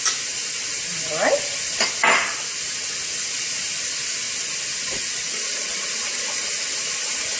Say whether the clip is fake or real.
real